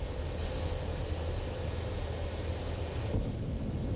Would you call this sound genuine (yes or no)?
yes